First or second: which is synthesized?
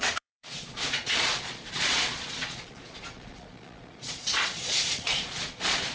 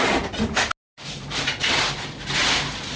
first